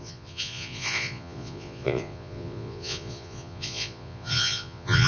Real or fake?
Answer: fake